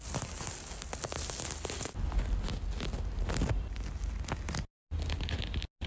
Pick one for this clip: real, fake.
real